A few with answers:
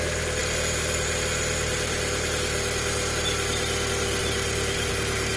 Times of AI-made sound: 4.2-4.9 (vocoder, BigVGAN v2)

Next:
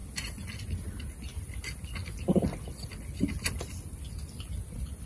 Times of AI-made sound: none

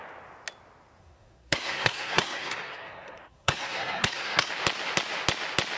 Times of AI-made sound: 1.0-4.5 (codec, SNAC)

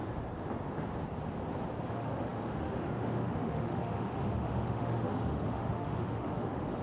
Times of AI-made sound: 1.9-6.8 (autoencoder, DAC-VAE)